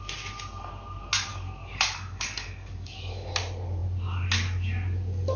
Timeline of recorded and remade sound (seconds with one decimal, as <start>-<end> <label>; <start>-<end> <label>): 0.0-1.3 recorded; 1.3-3.3 remade; 3.3-5.4 recorded